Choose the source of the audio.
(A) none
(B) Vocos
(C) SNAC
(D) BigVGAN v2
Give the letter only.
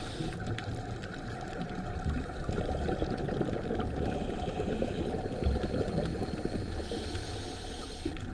A